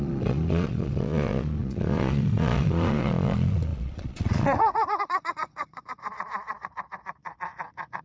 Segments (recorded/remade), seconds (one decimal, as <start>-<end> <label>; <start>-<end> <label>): 0.0-8.0 remade

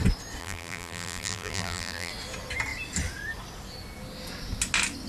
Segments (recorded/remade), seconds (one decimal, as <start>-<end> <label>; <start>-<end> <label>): 0.0-0.4 recorded; 0.4-2.1 remade; 2.1-5.1 recorded

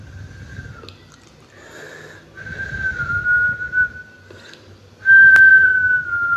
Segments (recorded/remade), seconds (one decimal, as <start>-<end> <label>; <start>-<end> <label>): 0.0-5.5 recorded; 5.5-6.4 remade

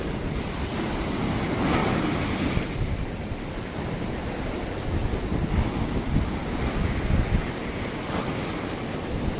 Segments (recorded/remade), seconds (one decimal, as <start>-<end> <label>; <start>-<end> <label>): 0.0-9.4 recorded

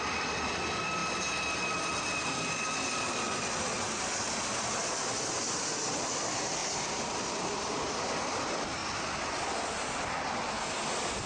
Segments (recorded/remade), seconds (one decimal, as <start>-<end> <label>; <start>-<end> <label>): 0.0-6.6 recorded; 6.6-7.2 remade; 7.2-11.3 recorded

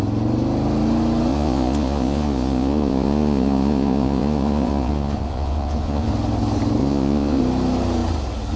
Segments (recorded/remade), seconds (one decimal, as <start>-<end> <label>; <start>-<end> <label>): 0.0-1.3 recorded; 1.3-6.1 remade; 6.1-6.8 recorded; 6.8-7.4 remade; 7.4-8.6 recorded

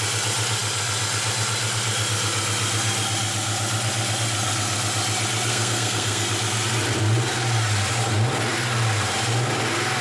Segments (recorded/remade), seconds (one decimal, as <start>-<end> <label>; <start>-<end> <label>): 0.0-5.5 recorded; 5.5-6.3 remade; 6.3-10.0 recorded